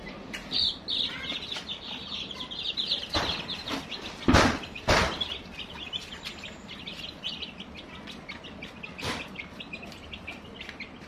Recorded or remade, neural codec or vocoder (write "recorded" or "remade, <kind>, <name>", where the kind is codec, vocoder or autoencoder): recorded